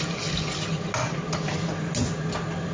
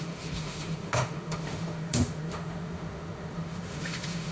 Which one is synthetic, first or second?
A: second